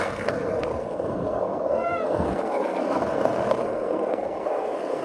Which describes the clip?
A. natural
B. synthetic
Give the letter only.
B